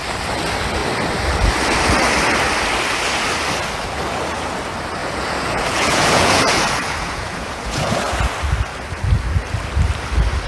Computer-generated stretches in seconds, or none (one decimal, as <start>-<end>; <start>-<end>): 5.0-8.0